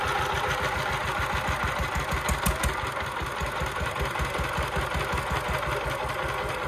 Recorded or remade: recorded